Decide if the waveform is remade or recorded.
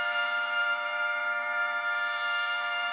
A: remade